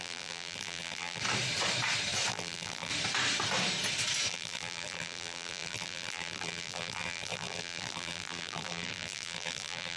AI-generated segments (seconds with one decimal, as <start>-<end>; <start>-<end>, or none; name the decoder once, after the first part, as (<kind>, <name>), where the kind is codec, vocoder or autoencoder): 0.0-1.2 (vocoder, BigVGAN v2); 2.3-2.9; 4.3-10.0